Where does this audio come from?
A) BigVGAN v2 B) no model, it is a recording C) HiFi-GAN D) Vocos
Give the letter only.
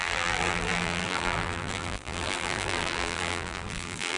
A